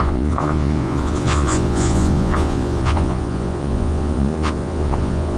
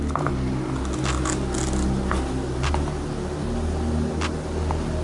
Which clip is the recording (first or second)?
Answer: second